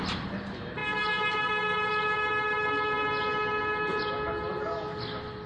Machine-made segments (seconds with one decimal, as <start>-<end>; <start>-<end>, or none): none